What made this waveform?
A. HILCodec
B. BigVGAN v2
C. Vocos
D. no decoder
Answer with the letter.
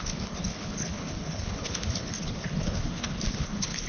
A